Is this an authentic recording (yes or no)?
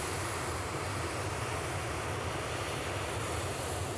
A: yes